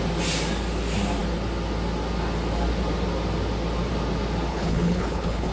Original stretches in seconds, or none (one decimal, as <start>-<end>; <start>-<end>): 0.0-4.5